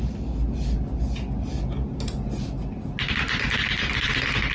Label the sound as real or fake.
real